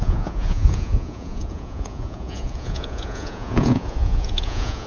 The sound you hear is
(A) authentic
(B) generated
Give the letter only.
B